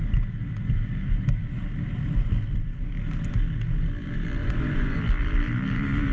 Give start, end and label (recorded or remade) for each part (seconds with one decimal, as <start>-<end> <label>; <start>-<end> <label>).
0.0-4.4 recorded; 4.4-5.0 remade; 5.0-6.1 recorded